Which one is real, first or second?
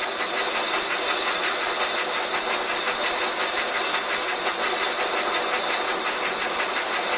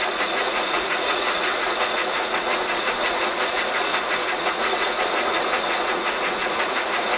first